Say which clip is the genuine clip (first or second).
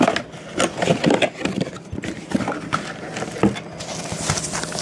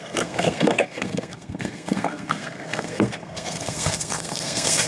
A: first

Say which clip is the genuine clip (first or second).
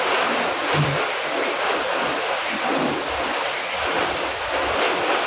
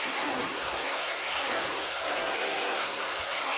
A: first